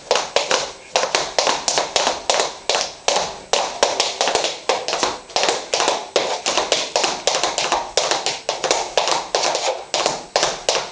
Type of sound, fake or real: real